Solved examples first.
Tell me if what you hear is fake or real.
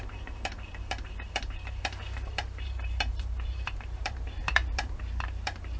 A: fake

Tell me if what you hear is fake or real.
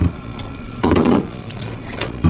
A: fake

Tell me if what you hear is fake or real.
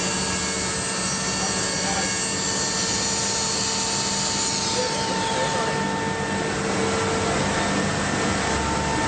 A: real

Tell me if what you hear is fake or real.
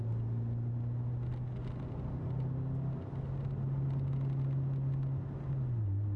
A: real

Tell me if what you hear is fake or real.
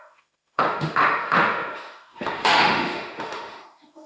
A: fake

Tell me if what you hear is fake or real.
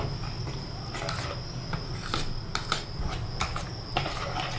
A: real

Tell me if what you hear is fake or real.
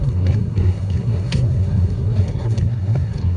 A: fake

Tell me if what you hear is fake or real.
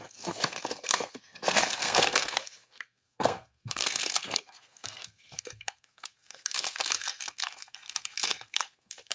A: fake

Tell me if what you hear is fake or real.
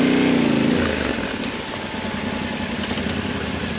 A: real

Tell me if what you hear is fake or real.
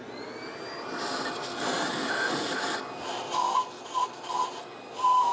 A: real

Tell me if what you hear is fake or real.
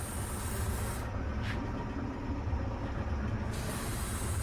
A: real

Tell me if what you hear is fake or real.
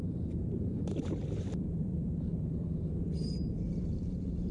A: fake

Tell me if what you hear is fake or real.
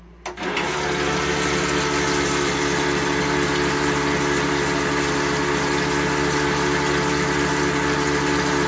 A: real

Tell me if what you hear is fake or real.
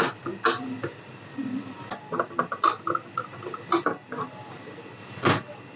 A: real